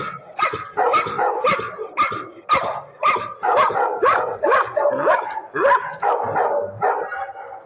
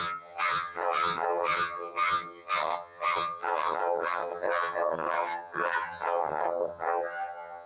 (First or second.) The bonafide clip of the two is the first